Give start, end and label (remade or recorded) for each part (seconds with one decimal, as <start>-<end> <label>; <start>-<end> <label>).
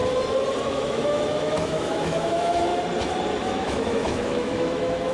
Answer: 0.0-0.6 recorded; 0.6-2.7 remade; 2.7-3.4 recorded; 3.4-5.1 remade